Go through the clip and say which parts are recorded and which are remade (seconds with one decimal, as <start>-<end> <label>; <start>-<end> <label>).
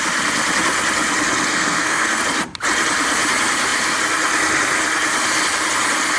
0.0-1.5 recorded; 1.5-2.2 remade; 2.2-6.2 recorded